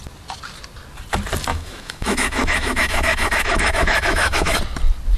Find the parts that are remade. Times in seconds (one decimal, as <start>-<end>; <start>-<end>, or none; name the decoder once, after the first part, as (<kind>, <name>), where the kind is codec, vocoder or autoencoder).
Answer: 1.5-4.6 (autoencoder, DAC-VAE)